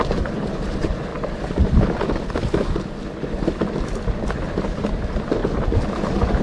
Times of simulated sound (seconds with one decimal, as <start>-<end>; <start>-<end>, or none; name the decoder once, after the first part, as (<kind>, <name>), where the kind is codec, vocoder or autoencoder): 0.0-1.1 (vocoder, BigVGAN v2); 4.9-6.4